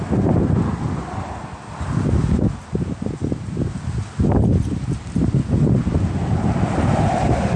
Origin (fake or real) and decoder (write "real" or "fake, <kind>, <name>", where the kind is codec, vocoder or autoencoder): real